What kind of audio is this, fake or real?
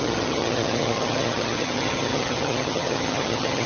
fake